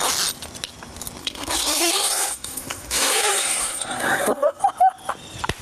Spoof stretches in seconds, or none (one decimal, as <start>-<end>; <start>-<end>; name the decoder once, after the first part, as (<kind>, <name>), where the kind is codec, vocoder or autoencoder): 1.2-4.6 (codec, SNAC)